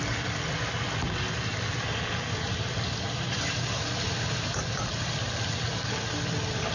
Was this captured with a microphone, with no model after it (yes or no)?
no